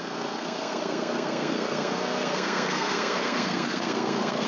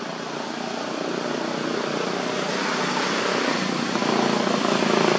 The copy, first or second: first